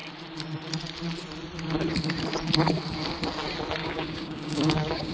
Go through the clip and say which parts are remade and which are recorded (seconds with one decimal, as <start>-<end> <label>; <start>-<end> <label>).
0.0-3.8 recorded; 3.8-5.1 remade